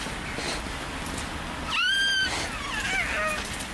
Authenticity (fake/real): real